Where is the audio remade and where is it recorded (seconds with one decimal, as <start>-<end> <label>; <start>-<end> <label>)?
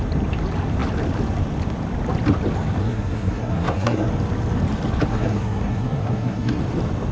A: 0.0-2.8 recorded; 2.8-4.1 remade; 4.1-5.1 recorded; 5.1-6.6 remade; 6.6-7.1 recorded